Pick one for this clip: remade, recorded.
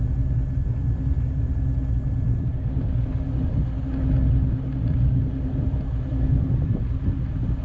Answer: recorded